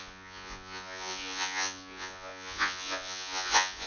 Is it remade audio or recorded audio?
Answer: remade